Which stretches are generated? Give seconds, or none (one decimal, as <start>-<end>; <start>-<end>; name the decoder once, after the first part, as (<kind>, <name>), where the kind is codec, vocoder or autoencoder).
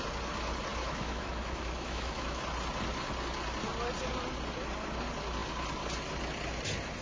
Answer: 0.7-2.4 (autoencoder, DAC-VAE)